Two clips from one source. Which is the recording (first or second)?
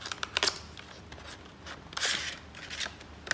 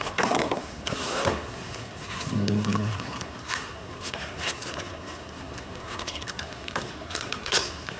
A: first